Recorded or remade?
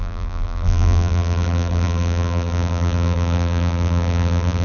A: remade